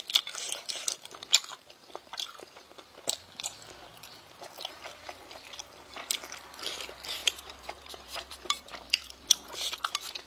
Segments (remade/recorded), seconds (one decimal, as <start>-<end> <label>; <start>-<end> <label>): 0.0-1.5 recorded; 1.5-2.6 remade; 2.6-7.2 recorded; 7.2-8.9 remade; 8.9-10.3 recorded